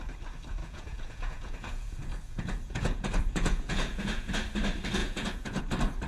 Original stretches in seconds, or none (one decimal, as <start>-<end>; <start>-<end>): 0.0-0.6; 4.3-5.0; 5.6-6.1